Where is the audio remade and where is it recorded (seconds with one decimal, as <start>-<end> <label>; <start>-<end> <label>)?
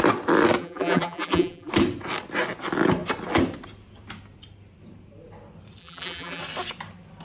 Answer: 0.0-0.6 recorded; 0.6-1.7 remade; 1.7-5.8 recorded; 5.8-6.4 remade; 6.4-7.2 recorded